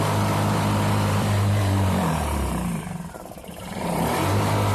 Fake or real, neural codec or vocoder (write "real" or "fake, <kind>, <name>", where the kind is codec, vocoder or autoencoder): fake, vocoder, BigVGAN v2